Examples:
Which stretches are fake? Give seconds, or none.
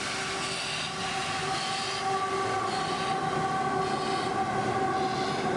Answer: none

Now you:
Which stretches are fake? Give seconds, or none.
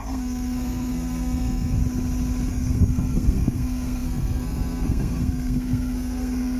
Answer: 0.0-1.8 (codec, SNAC); 2.5-6.6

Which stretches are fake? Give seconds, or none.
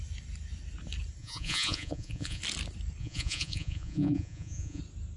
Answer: 1.2-2.4 (vocoder, Vocos); 3.0-4.8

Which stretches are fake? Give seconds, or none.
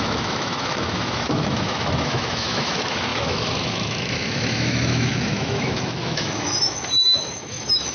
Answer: 0.0-7.9 (autoencoder, DAC-VAE)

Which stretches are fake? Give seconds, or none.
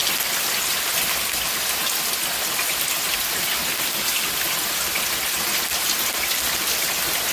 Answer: none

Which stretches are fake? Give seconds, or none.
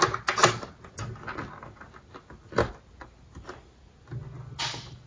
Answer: none